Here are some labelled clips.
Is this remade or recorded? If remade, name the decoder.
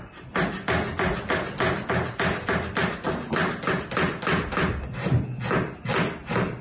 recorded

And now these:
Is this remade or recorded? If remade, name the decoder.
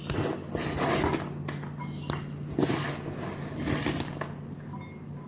recorded